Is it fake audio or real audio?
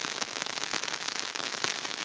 fake